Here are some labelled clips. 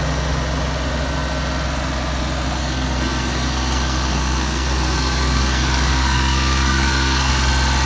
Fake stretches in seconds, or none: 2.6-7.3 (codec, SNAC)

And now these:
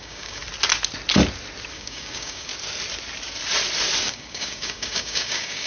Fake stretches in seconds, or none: 0.0-0.4 (codec, DAC); 1.7-2.5; 4.0-5.7